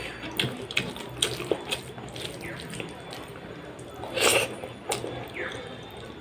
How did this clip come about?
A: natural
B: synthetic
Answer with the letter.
A